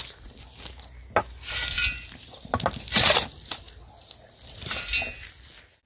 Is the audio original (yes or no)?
yes